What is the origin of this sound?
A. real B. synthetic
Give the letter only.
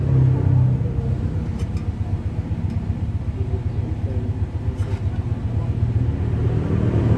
A